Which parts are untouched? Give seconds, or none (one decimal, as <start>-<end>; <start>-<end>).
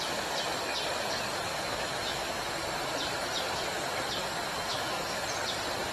0.0-1.5; 2.5-4.7; 5.2-5.9